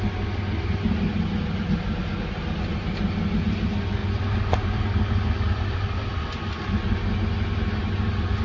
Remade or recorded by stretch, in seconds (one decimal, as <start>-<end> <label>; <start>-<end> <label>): 0.0-8.4 recorded